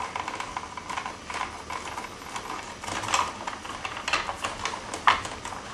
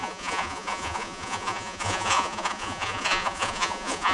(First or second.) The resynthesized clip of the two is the second